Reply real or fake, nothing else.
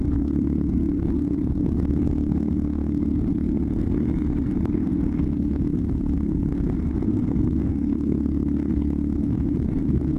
fake